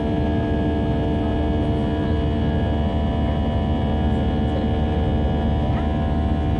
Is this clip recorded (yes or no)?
yes